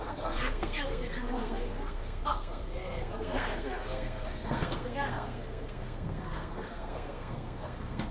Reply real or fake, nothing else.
fake